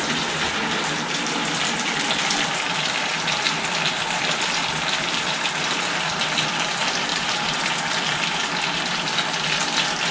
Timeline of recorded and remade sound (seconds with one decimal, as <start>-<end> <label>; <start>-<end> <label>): 0.0-7.1 recorded; 7.1-7.6 remade; 7.6-10.1 recorded